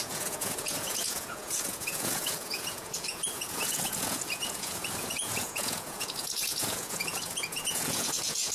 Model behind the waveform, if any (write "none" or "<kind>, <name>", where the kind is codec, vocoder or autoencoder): vocoder, Vocos